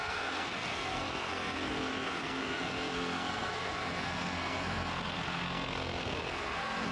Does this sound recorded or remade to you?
remade